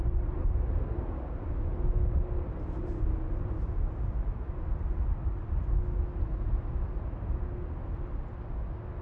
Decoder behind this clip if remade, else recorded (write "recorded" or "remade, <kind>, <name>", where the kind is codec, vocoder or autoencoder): recorded